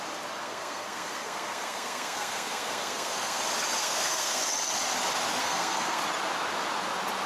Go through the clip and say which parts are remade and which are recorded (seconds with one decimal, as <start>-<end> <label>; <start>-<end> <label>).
0.0-0.4 recorded; 0.4-3.4 remade; 3.4-3.8 recorded; 3.8-4.4 remade; 4.4-5.4 recorded; 5.4-6.0 remade; 6.0-7.3 recorded